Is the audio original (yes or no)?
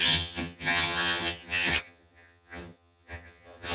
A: no